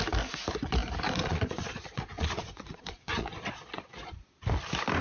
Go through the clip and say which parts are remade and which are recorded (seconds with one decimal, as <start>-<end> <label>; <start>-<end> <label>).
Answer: 0.0-1.2 recorded; 1.2-4.2 remade; 4.2-5.0 recorded